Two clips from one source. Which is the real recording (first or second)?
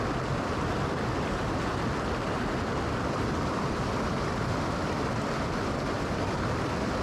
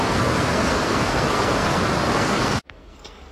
first